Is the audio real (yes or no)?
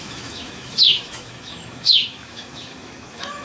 no